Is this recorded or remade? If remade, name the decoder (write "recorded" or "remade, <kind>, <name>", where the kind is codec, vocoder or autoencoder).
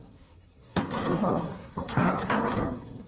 remade, codec, SNAC